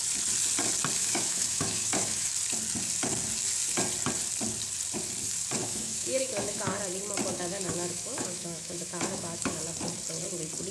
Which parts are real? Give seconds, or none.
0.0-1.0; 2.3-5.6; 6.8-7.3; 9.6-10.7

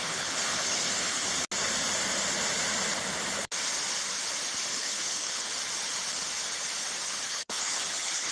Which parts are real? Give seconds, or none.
1.3-4.7; 5.5-7.3

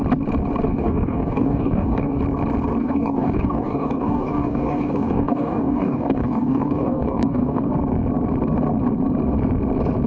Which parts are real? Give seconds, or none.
0.0-0.7; 2.2-2.8; 7.7-10.1

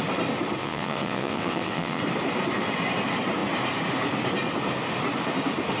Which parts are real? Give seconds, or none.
0.0-0.6; 2.0-5.8

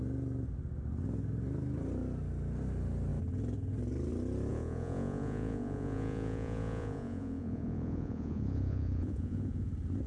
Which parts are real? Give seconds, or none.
0.0-4.5; 9.7-10.1

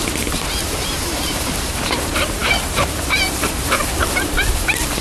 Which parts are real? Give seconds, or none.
4.0-5.0

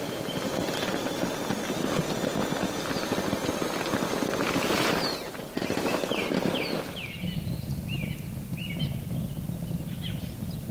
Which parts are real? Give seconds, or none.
0.0-2.4; 7.2-10.7

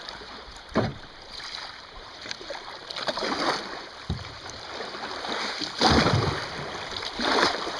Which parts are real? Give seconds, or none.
0.9-1.8; 2.8-7.8